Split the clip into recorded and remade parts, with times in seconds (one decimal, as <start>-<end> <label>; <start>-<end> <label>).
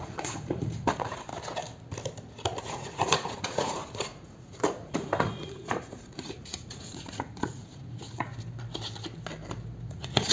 0.0-1.3 remade; 1.3-2.6 recorded; 2.6-8.3 remade; 8.3-9.9 recorded; 9.9-10.3 remade